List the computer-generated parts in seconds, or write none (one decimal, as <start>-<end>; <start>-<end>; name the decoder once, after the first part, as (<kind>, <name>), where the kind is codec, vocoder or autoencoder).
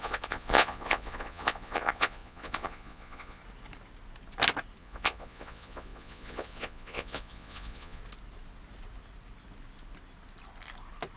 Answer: 0.0-3.4 (vocoder, Vocos); 4.8-8.0